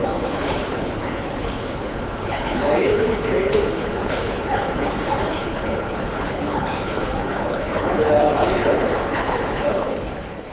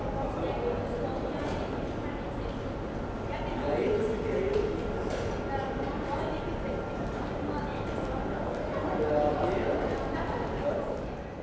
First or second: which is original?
second